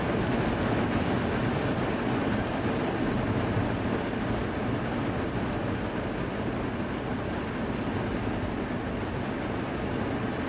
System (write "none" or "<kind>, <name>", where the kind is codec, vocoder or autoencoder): none